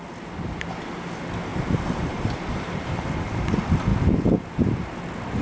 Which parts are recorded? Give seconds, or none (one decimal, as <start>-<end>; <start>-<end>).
0.0-1.5; 3.5-5.4